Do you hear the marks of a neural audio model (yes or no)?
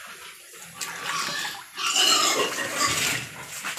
no